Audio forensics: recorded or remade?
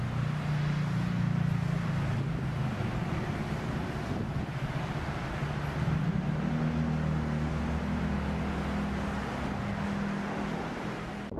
recorded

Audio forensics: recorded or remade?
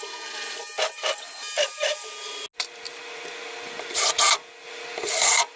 recorded